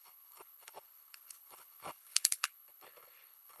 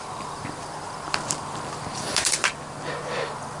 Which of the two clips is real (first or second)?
second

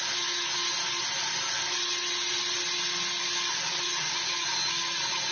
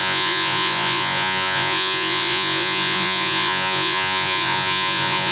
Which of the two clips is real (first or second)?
first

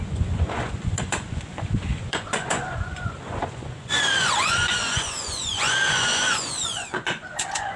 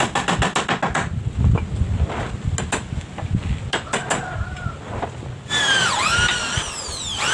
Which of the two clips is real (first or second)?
second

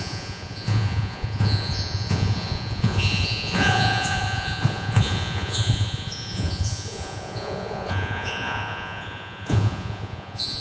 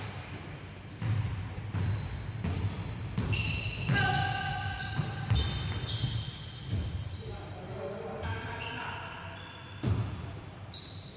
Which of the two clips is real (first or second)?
second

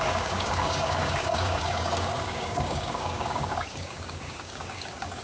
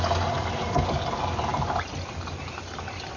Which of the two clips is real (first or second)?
second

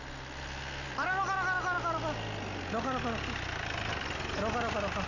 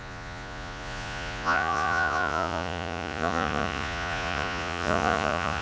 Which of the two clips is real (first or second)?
first